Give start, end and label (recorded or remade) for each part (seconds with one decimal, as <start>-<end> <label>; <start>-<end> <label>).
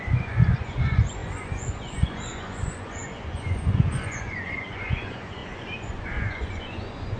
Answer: 0.0-7.2 remade